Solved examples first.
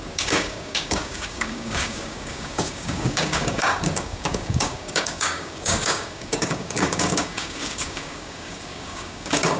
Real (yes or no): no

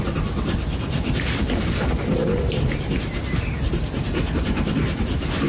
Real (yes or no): yes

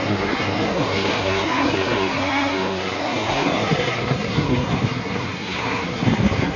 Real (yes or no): no